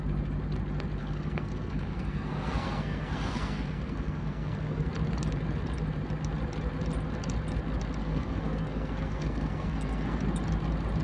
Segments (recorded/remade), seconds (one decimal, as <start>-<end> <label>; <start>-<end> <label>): 0.0-1.0 recorded; 1.0-4.9 remade; 4.9-8.0 recorded; 8.0-10.2 remade; 10.2-11.0 recorded